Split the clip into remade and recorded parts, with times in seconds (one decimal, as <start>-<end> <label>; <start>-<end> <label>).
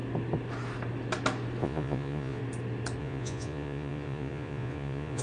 0.0-1.6 recorded; 1.6-2.4 remade; 2.4-3.0 recorded; 3.0-5.2 remade